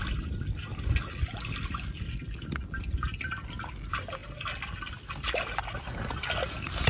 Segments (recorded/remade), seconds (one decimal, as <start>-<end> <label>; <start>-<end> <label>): 0.0-6.9 recorded